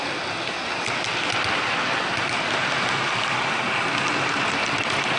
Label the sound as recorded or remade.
recorded